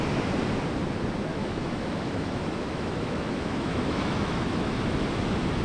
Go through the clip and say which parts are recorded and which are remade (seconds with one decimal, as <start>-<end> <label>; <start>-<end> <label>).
0.0-1.3 recorded; 1.3-4.7 remade; 4.7-5.6 recorded